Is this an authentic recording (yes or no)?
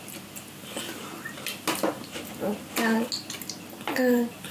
yes